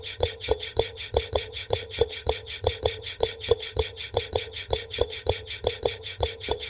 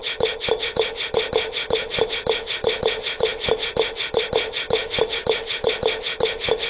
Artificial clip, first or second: first